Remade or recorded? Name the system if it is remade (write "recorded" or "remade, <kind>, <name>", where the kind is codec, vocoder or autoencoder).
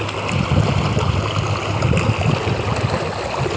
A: recorded